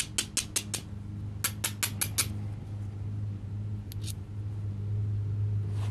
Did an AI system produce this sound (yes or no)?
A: no